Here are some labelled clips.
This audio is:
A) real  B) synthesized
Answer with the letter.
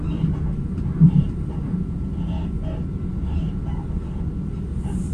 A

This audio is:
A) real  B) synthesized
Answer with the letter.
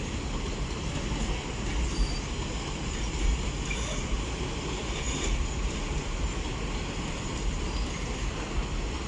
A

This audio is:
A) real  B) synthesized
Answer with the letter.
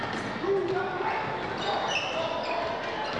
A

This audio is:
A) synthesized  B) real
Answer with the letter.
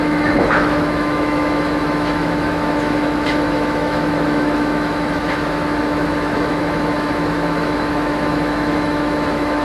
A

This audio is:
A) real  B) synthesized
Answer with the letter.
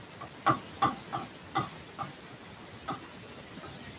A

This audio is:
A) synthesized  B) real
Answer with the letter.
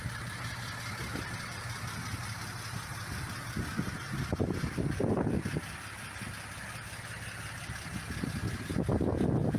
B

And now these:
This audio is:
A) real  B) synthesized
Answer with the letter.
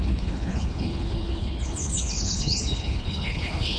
B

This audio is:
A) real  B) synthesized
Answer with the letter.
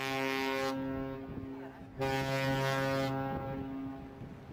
A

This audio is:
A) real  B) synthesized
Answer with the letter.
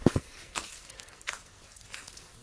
B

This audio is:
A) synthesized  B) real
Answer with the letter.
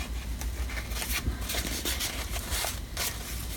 B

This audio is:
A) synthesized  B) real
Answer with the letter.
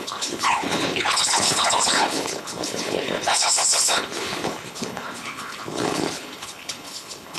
A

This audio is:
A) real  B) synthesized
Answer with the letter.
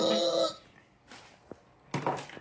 A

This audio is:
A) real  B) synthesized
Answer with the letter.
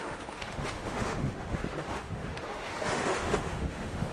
B